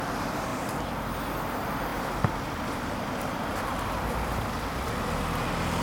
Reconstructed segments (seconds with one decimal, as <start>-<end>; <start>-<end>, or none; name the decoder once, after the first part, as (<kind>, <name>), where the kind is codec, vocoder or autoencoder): none